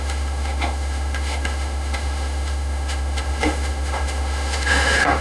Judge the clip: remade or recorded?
remade